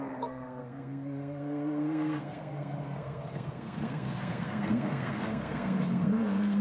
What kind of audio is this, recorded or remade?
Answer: remade